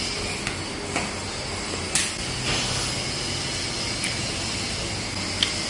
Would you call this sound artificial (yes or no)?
no